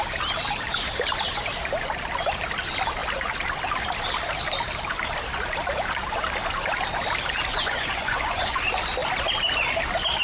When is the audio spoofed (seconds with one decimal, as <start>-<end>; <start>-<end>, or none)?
7.5-8.6